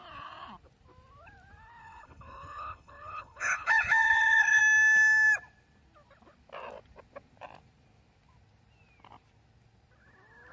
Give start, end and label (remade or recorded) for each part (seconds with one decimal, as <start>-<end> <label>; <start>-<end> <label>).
0.0-1.8 recorded; 1.8-4.6 remade; 4.6-10.5 recorded